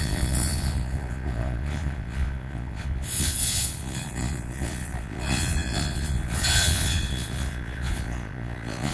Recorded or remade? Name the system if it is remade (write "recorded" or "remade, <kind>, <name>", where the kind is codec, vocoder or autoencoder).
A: remade, vocoder, Vocos